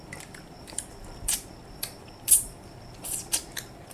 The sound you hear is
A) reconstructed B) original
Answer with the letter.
A